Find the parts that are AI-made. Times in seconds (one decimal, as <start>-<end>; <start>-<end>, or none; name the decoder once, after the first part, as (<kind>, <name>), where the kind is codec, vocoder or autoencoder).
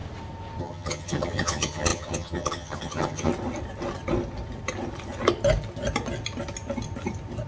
0.6-3.3 (vocoder, HiFi-GAN)